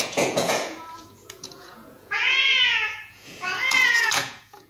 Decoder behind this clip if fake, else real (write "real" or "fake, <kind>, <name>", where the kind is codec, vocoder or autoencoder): fake, vocoder, Vocos